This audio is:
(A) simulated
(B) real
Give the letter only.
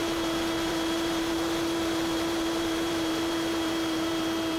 A